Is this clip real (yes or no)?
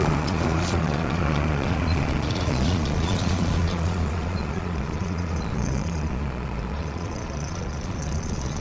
no